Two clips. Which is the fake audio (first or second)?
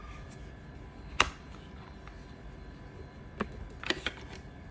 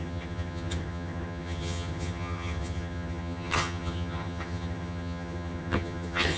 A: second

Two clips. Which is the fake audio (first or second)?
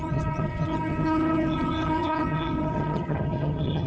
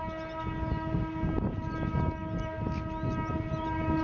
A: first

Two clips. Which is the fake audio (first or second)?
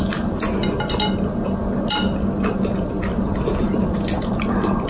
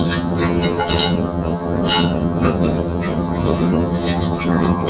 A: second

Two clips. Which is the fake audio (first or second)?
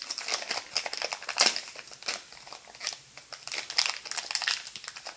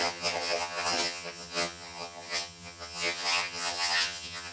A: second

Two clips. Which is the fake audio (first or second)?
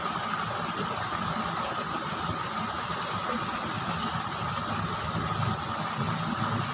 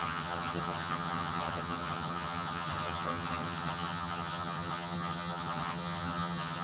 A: second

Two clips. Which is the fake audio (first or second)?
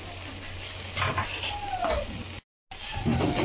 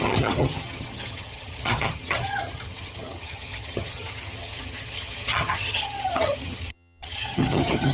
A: second